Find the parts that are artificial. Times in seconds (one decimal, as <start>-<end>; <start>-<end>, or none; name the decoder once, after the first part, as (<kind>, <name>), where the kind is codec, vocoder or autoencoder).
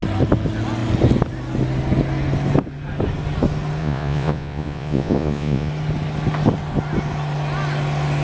3.8-5.7 (vocoder, Vocos)